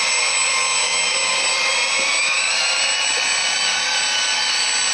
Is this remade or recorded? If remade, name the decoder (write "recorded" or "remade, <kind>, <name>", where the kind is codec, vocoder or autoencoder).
recorded